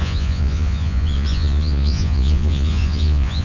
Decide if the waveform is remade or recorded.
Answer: remade